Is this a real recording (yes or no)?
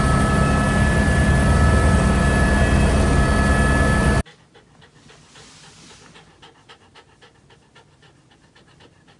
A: yes